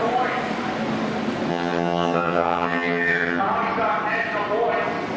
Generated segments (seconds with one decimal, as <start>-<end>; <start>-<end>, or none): 1.5-3.4